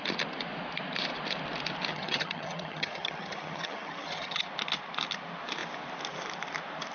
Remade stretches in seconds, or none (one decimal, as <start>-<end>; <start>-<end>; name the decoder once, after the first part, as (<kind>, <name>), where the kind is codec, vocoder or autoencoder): 1.9-4.5 (vocoder, HiFi-GAN)